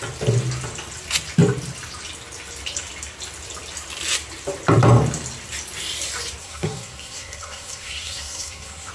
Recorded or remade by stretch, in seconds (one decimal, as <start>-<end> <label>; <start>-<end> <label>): 0.0-6.4 recorded; 6.4-8.9 remade